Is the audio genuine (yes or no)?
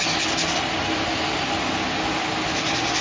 yes